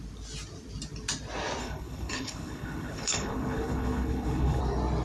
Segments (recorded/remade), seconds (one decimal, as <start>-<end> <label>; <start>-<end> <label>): 0.0-1.6 recorded; 1.6-4.6 remade; 4.6-5.0 recorded